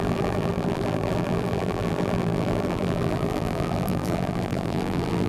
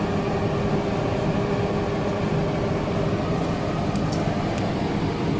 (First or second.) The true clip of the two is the second